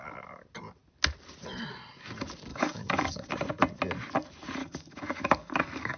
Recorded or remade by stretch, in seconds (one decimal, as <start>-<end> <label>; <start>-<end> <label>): 0.0-2.5 recorded; 2.5-3.3 remade; 3.3-4.6 recorded; 4.6-6.0 remade